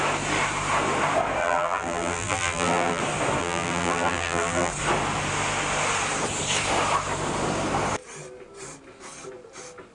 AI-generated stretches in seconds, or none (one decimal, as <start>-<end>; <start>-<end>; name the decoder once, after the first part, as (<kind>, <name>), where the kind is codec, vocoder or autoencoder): 1.4-3.0 (vocoder, BigVGAN v2); 3.4-4.7